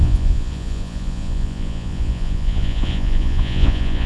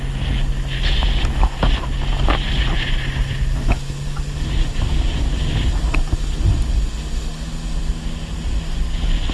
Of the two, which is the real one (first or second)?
second